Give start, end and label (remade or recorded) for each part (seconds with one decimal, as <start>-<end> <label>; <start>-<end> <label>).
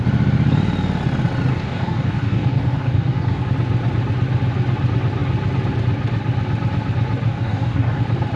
0.0-1.5 recorded; 1.5-3.4 remade; 3.4-7.3 recorded; 7.3-8.0 remade; 8.0-8.4 recorded